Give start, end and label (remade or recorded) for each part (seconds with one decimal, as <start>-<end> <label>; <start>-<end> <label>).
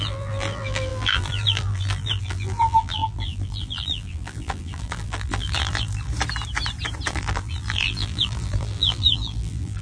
0.0-6.1 remade; 6.1-7.1 recorded; 7.1-9.8 remade